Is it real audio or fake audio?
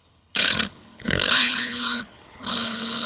fake